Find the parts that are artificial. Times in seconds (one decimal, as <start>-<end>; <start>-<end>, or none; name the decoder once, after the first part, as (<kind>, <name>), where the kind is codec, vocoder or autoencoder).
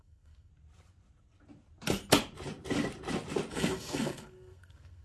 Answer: 0.0-0.5 (codec, SNAC); 3.5-5.0